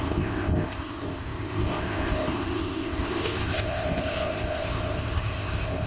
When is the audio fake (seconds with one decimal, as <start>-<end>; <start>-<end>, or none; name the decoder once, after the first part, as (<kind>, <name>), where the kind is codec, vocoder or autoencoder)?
0.0-5.9 (codec, ZipCodec)